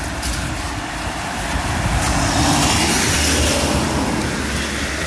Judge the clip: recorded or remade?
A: recorded